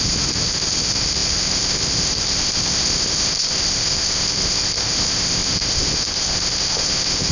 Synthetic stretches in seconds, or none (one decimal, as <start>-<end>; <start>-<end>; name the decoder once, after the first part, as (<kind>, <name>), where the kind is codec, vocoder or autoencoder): 0.0-7.3 (codec, ZipCodec)